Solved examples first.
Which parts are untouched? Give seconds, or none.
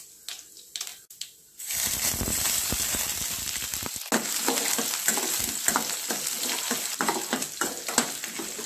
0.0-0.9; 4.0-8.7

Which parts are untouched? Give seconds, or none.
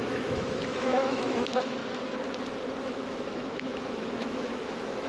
1.8-2.8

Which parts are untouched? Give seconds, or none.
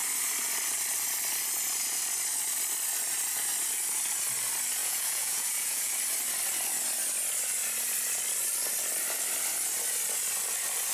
0.0-4.8; 5.9-10.9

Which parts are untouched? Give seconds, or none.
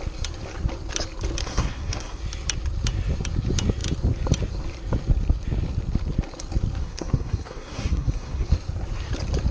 0.0-1.4; 2.2-6.8; 8.5-9.5